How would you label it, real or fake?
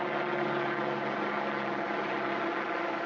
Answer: real